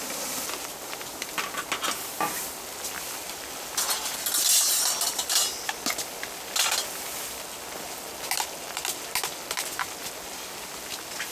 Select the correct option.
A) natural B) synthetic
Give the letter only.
A